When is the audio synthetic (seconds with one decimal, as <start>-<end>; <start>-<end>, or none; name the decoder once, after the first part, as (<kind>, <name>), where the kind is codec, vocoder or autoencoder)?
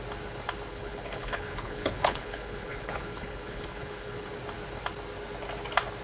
0.7-4.3 (codec, HILCodec)